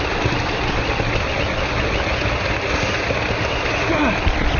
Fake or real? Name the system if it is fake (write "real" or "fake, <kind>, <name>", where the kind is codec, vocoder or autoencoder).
real